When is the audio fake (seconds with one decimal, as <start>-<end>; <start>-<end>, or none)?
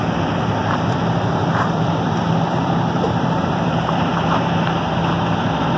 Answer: 0.6-4.1